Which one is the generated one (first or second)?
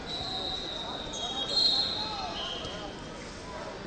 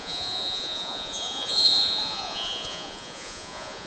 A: second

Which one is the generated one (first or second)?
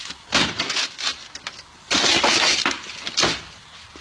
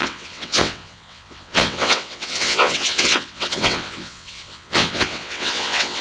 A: second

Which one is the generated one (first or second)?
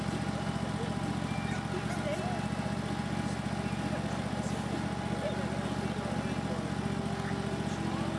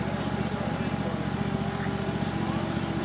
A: second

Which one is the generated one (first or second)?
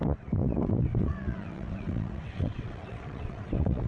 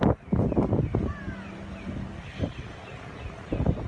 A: first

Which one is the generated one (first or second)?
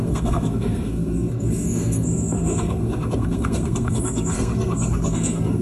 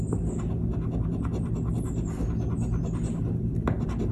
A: first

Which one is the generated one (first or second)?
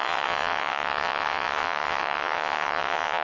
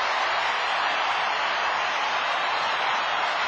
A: first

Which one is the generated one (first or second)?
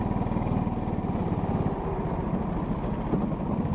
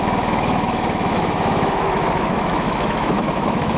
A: second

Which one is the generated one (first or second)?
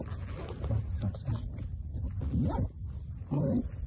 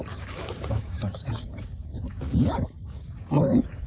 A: second